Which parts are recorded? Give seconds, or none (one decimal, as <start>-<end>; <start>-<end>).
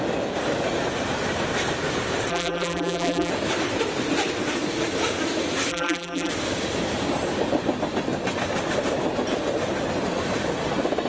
0.0-2.3; 3.3-5.7; 6.3-11.1